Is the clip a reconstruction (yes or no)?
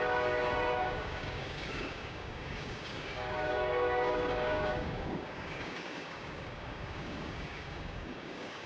yes